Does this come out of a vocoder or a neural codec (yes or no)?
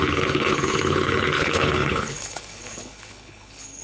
yes